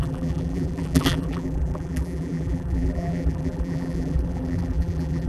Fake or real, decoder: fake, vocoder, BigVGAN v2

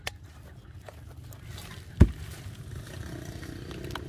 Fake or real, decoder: real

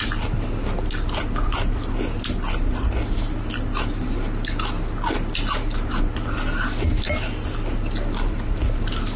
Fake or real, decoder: real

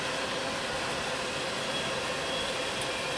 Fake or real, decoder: real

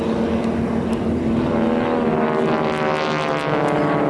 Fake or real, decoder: real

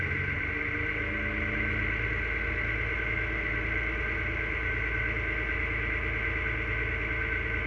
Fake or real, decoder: real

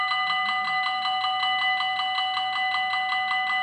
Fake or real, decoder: real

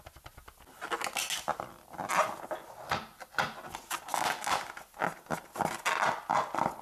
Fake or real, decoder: real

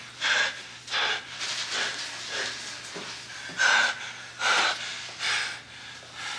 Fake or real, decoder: real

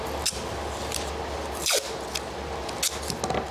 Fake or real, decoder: real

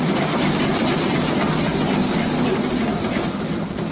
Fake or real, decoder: real